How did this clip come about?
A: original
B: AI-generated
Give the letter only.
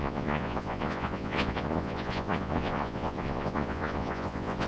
B